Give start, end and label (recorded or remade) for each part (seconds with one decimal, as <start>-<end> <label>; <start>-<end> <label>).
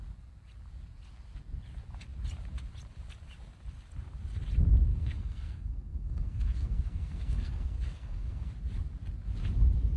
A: 0.0-4.9 recorded; 4.9-8.5 remade; 8.5-10.0 recorded